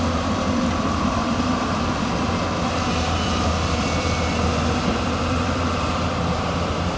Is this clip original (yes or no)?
no